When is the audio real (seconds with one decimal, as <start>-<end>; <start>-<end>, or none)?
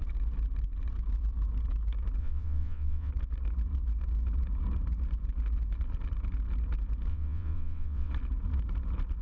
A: 0.0-2.2; 3.1-7.1; 8.1-9.2